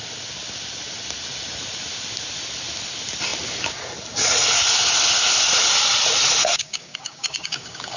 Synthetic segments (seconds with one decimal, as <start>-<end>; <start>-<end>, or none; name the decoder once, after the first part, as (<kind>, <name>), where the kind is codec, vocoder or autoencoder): 6.4-8.0 (codec, DAC)